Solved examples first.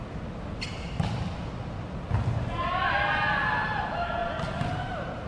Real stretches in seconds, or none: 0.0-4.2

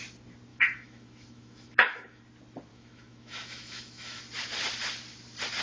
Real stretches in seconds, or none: 0.0-0.5; 2.2-2.7; 4.2-5.6